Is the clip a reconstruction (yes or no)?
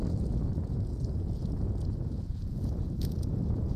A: yes